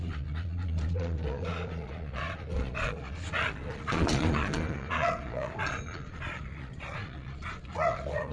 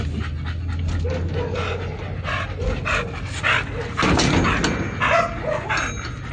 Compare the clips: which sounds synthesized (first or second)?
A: first